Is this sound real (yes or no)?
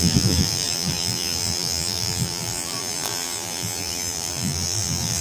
no